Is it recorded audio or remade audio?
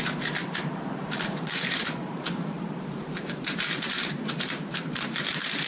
remade